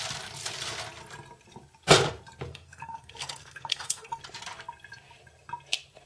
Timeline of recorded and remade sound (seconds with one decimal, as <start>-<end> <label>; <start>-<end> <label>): 0.0-2.5 recorded; 2.5-4.2 remade; 4.2-6.1 recorded